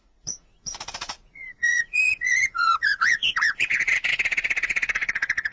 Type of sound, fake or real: fake